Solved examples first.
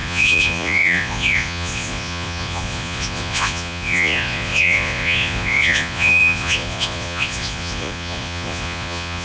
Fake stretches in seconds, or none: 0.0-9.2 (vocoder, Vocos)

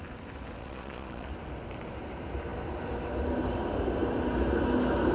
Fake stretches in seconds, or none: 0.6-1.3 (vocoder, Vocos)

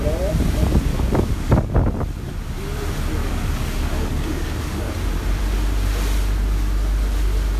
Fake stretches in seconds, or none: 0.9-1.7 (codec, DAC); 3.2-4.9